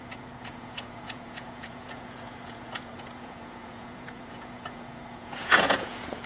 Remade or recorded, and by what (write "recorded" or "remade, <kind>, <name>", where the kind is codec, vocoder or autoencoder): remade, vocoder, Vocos